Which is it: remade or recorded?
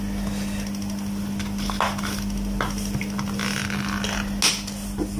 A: recorded